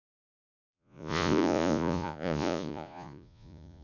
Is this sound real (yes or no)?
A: no